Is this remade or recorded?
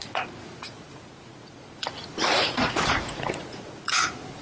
remade